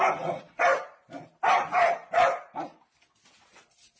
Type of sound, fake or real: real